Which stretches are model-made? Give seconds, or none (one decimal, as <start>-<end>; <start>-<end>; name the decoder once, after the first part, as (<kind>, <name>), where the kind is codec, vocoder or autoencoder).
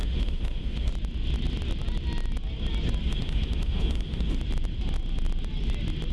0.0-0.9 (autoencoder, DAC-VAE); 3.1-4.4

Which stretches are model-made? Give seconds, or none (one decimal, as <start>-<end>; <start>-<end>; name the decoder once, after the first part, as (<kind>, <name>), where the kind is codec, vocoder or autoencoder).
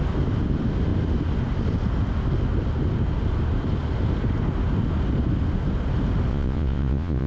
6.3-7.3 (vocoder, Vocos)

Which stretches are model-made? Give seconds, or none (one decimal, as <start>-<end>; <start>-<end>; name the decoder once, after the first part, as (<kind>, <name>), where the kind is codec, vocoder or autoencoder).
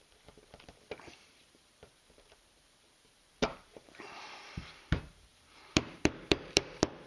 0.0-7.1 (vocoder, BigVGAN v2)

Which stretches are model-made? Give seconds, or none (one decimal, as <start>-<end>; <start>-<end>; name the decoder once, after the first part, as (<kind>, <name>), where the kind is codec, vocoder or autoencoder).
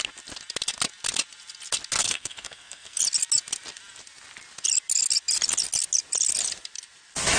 2.0-3.0 (codec, SNAC)